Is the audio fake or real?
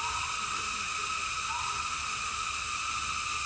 real